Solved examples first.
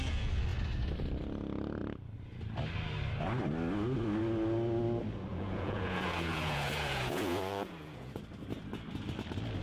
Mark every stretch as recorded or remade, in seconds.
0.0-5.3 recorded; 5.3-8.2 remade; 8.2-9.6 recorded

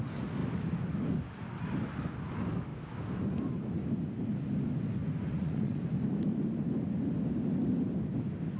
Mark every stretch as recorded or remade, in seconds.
0.0-5.3 recorded; 5.3-5.8 remade; 5.8-8.6 recorded

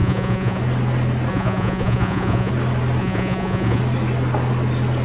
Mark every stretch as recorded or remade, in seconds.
0.0-0.6 remade; 0.6-1.3 recorded; 1.3-2.5 remade; 2.5-3.0 recorded; 3.0-3.8 remade; 3.8-5.0 recorded

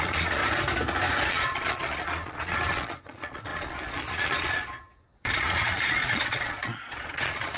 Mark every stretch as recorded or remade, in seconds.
0.0-0.4 remade; 0.4-1.3 recorded; 1.3-7.6 remade